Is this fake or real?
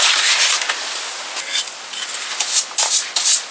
real